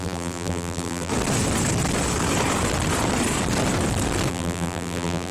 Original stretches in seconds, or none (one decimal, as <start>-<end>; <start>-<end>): 1.1-4.3